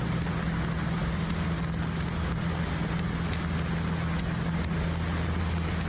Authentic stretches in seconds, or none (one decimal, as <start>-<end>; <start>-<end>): 0.0-5.9